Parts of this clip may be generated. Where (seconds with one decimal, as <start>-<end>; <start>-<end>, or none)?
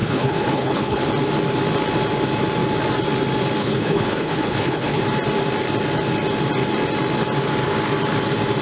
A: 0.0-1.0; 3.6-5.0